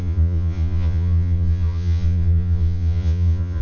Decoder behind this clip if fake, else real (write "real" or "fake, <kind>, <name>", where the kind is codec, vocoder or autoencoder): fake, vocoder, Vocos